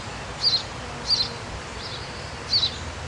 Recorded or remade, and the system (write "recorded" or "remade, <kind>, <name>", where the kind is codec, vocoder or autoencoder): recorded